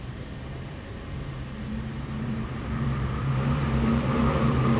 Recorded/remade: remade